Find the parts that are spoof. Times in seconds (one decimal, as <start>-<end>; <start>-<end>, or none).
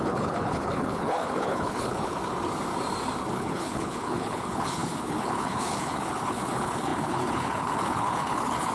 0.0-2.2; 3.3-8.7